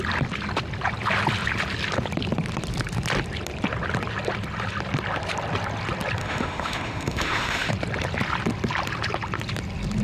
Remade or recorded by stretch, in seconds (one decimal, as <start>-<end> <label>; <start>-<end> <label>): 0.0-6.2 recorded; 6.2-7.7 remade; 7.7-10.0 recorded